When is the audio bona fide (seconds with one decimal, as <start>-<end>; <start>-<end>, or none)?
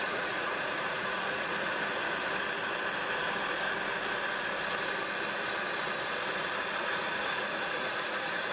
1.7-6.8